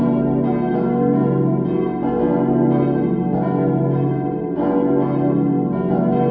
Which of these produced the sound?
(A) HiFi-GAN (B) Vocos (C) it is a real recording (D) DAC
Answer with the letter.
C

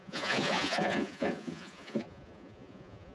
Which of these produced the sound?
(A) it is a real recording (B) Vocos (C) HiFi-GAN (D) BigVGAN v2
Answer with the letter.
B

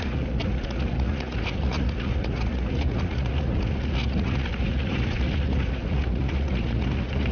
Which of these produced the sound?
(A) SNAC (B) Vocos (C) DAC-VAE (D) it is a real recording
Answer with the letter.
B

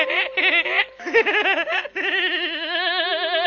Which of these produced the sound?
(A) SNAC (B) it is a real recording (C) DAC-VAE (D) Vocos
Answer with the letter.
B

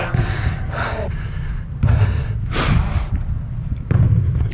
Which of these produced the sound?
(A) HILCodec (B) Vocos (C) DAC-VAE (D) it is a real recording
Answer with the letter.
D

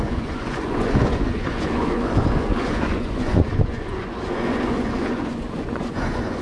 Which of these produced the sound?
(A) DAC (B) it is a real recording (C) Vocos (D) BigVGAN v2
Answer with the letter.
C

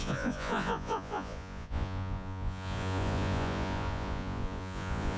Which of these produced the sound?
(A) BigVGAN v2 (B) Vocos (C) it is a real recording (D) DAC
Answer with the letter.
B